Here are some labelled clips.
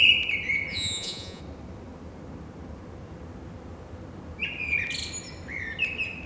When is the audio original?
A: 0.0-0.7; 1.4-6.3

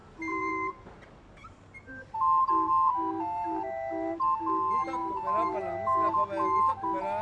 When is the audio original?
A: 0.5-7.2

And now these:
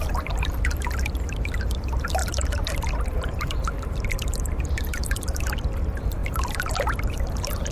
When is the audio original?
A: none

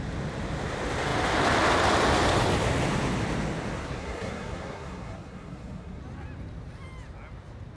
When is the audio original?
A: 0.0-3.8; 6.0-7.8